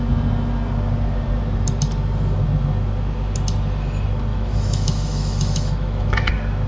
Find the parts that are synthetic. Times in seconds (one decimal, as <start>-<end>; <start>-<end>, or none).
4.3-6.3